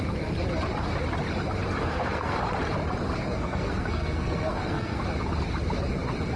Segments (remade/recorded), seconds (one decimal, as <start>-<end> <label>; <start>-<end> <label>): 0.0-1.8 recorded; 1.8-2.4 remade; 2.4-3.3 recorded; 3.3-5.0 remade; 5.0-6.4 recorded